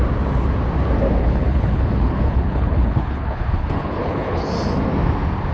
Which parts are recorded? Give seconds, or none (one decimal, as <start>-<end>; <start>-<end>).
0.0-1.2; 4.5-5.5